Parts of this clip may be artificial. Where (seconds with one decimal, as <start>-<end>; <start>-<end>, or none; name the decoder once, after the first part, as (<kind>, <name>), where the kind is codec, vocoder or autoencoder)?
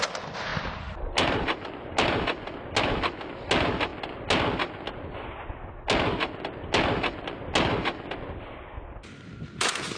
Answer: none